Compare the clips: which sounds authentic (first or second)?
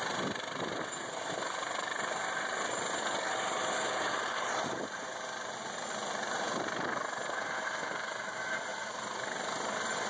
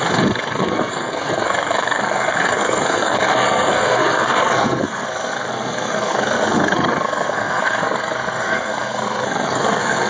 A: first